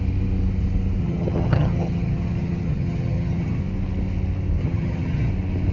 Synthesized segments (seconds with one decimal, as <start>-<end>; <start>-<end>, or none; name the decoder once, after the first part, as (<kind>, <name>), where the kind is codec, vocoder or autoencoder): 1.0-3.6 (vocoder, HiFi-GAN); 4.6-5.3